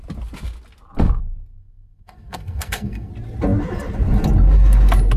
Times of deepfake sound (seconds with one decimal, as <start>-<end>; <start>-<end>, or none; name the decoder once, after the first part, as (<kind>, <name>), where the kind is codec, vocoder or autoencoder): 1.5-3.1 (codec, SNAC)